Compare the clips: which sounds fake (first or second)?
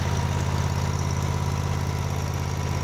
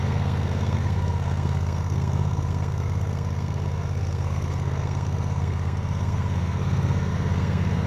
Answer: second